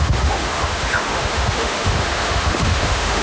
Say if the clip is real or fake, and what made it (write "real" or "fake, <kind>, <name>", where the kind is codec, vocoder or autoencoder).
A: fake, autoencoder, DAC-VAE